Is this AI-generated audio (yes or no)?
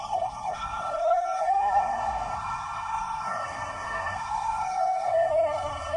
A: yes